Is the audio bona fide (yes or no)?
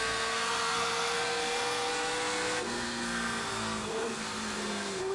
no